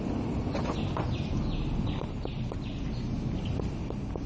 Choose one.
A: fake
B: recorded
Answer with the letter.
B